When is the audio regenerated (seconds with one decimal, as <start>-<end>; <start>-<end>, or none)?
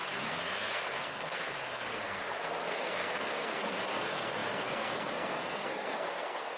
0.0-6.6